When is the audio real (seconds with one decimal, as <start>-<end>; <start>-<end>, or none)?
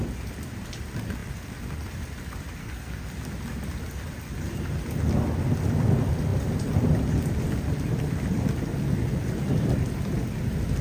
0.0-2.6; 3.1-10.8